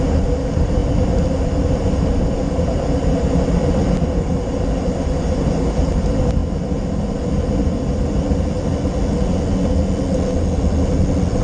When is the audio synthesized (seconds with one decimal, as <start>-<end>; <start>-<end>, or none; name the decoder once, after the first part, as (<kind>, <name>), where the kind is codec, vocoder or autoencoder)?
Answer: none